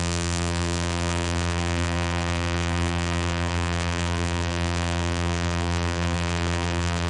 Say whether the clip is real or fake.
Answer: fake